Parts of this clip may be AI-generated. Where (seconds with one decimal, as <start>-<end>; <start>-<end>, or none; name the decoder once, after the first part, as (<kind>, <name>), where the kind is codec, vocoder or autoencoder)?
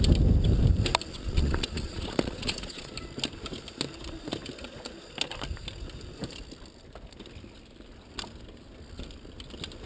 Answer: 1.1-2.9 (vocoder, Vocos)